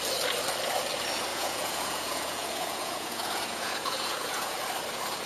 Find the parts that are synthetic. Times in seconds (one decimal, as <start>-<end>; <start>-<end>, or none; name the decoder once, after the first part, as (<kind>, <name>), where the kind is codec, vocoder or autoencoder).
1.3-4.5 (vocoder, Vocos)